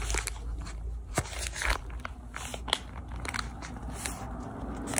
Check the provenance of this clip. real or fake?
real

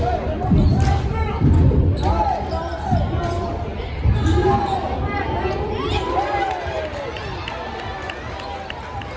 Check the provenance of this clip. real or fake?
real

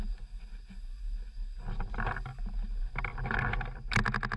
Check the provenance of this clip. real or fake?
real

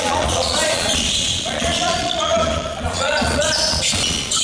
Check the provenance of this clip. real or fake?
fake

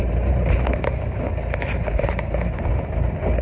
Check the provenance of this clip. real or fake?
real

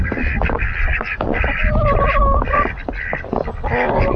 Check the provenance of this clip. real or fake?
real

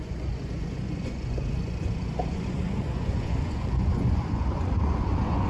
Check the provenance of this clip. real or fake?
fake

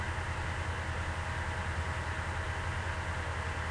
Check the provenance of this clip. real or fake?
real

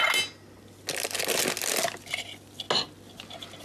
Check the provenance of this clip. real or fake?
real